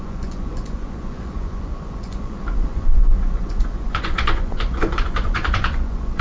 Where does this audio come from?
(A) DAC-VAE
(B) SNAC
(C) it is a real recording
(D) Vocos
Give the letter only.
D